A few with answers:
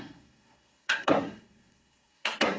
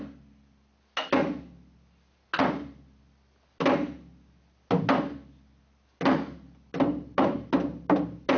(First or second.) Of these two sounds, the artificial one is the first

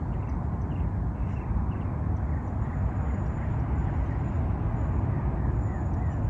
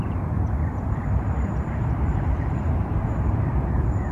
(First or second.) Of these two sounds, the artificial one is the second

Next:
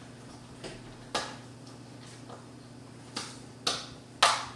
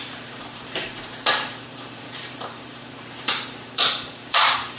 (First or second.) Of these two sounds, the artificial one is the second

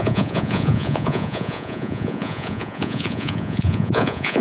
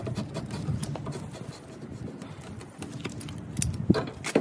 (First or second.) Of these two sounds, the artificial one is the first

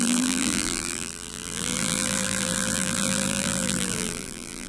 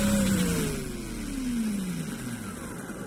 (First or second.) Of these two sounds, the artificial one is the first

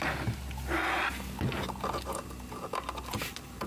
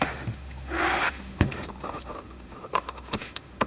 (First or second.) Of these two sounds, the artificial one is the second